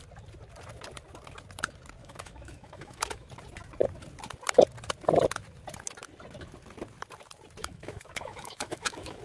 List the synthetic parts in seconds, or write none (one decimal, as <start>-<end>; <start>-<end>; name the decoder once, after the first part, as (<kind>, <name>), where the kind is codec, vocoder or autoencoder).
2.0-3.3 (autoencoder, DAC-VAE); 7.6-9.2